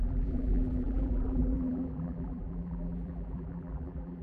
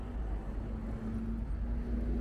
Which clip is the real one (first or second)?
second